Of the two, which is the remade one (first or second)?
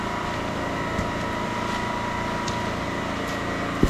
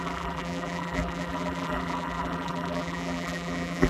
second